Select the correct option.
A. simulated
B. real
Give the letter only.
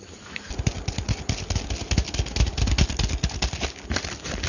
B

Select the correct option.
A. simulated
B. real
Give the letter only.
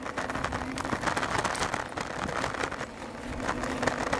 B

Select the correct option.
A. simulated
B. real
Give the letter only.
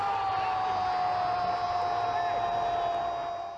B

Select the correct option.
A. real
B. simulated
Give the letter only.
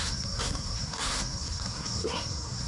B